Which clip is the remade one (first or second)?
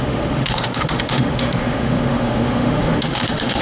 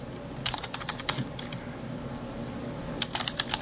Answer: first